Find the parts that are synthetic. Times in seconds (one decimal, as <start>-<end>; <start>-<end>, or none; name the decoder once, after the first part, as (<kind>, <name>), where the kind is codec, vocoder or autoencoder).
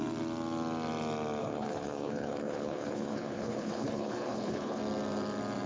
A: 1.4-4.8 (codec, HILCodec)